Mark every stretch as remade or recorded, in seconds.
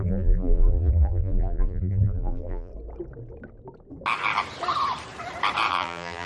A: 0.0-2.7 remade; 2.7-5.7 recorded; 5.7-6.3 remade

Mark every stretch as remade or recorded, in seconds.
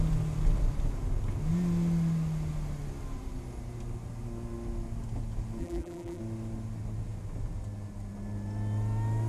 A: 0.0-5.6 recorded; 5.6-6.2 remade; 6.2-9.3 recorded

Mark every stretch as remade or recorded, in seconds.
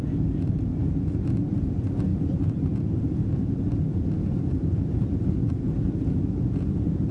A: 0.0-2.1 recorded; 2.1-5.2 remade; 5.2-7.1 recorded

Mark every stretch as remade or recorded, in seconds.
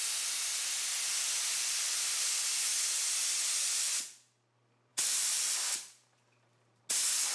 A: 0.0-4.9 recorded; 4.9-6.8 remade; 6.8-7.3 recorded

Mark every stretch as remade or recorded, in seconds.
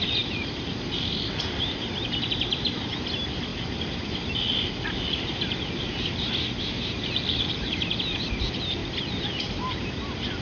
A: 0.0-3.5 remade; 3.5-7.4 recorded; 7.4-8.8 remade; 8.8-9.9 recorded; 9.9-10.4 remade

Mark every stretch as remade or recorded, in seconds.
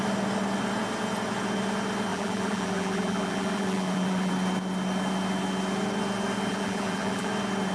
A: 0.0-2.1 recorded; 2.1-4.3 remade; 4.3-6.5 recorded; 6.5-7.3 remade; 7.3-7.7 recorded